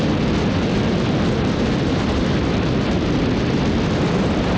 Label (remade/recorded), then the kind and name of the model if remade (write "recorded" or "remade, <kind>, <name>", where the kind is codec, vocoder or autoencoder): recorded